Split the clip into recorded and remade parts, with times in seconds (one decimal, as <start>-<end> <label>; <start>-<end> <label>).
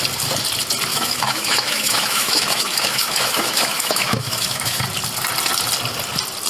0.0-0.9 recorded; 0.9-4.8 remade; 4.8-6.5 recorded